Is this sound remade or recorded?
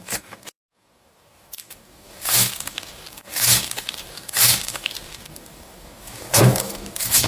remade